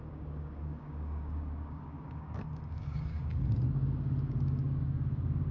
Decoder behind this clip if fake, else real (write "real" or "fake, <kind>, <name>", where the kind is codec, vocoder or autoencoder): fake, codec, DAC